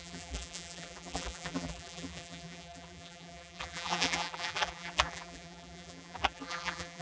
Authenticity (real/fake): fake